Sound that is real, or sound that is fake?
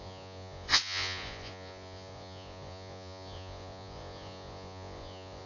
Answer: fake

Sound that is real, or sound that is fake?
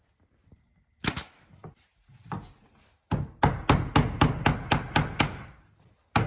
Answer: real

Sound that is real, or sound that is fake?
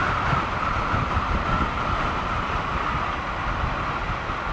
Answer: real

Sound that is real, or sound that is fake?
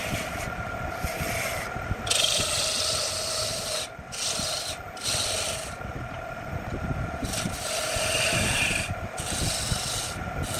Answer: real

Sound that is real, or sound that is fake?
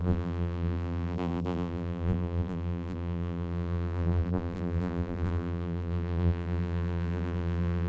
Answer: fake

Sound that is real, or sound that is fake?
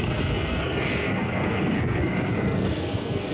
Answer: fake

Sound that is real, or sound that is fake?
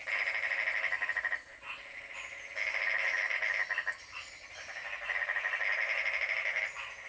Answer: real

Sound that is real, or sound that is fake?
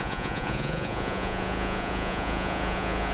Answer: fake